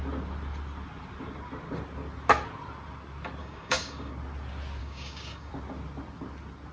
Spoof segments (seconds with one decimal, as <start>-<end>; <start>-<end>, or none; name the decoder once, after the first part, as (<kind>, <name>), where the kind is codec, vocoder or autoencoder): 3.4-4.1 (codec, DAC); 4.8-5.5